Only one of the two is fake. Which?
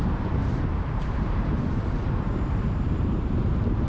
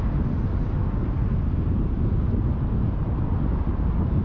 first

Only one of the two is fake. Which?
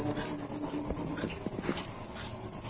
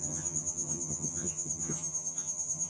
second